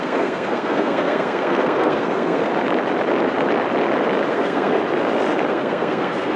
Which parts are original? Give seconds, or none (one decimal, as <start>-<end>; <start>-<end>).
2.5-4.3; 4.8-5.5